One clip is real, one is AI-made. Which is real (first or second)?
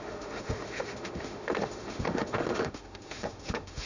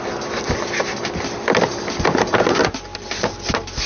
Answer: second